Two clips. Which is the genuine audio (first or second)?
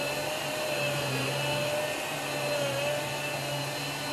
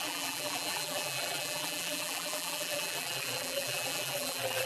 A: first